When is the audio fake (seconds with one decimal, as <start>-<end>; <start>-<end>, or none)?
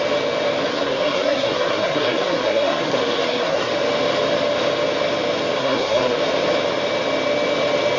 0.7-3.7; 5.6-6.2